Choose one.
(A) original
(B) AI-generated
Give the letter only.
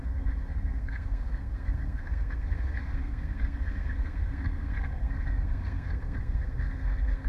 B